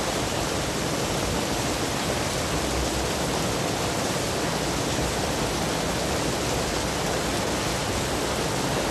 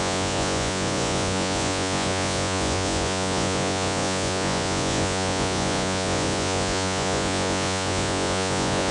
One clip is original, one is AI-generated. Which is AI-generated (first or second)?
second